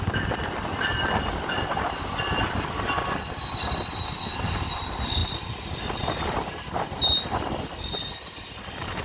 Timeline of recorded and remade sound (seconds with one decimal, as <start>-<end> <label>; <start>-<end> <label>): 0.0-9.0 recorded

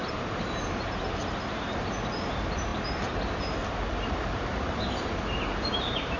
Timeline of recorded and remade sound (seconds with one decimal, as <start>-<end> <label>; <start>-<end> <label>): 0.0-6.2 remade

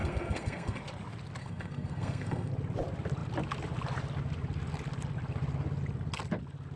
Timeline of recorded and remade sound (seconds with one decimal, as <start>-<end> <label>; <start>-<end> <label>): 0.0-0.8 remade; 0.8-1.4 recorded; 1.4-2.5 remade; 2.5-6.8 recorded

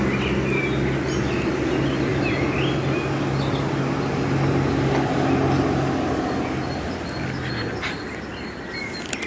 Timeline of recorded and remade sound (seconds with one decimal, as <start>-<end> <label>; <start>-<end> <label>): 0.0-9.3 recorded

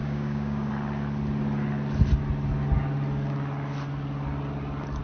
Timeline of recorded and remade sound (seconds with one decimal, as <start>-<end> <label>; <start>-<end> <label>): 0.0-0.7 remade; 0.7-5.0 recorded

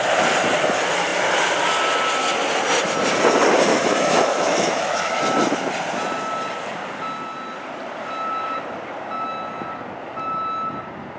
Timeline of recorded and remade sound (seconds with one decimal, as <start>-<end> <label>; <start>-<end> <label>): 0.0-3.7 recorded; 3.7-5.2 remade; 5.2-11.2 recorded